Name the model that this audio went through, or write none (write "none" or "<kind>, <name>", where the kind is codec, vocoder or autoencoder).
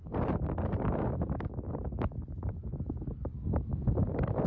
none